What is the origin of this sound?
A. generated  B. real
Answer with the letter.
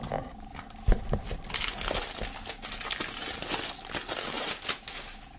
B